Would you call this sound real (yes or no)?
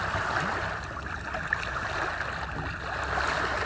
yes